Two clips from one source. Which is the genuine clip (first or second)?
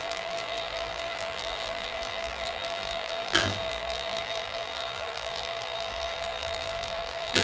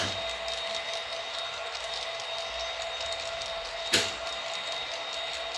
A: second